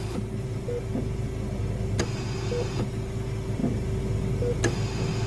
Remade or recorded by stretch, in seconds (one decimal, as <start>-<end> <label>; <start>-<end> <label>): 0.0-5.3 recorded